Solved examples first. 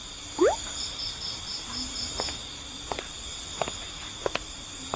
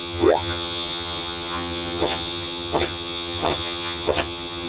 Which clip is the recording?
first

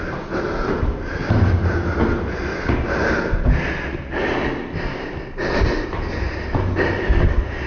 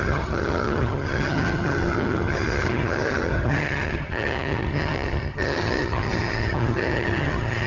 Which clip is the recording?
first